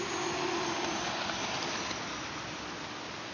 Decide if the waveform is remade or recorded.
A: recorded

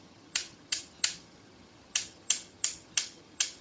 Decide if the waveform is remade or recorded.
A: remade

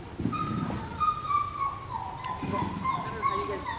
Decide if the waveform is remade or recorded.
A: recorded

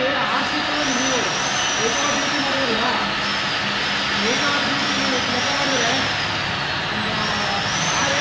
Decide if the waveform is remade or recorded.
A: recorded